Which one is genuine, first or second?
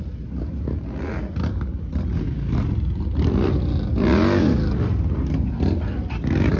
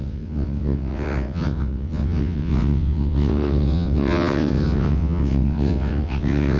first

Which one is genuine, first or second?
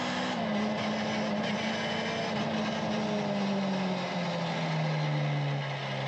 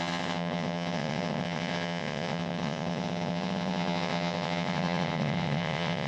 first